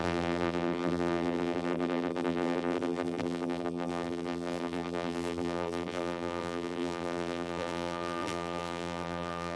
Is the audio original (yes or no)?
no